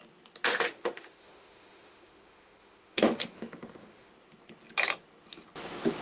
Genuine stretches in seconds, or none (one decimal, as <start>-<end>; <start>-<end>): 0.0-0.5; 4.1-6.0